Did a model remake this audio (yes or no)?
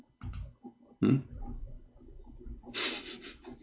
no